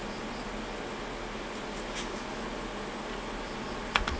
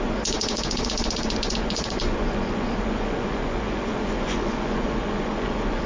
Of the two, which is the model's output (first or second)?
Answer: second